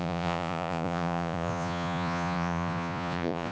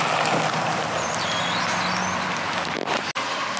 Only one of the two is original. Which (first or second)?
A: second